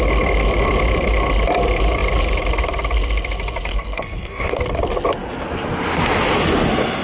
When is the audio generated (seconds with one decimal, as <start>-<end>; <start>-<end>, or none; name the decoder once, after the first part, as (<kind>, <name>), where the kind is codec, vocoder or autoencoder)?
3.7-4.6 (codec, SNAC)